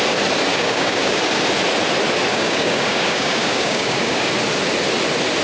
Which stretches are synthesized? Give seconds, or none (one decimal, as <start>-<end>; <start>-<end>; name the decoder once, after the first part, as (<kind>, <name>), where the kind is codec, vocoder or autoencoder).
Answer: 0.5-1.2 (codec, DAC); 2.3-4.3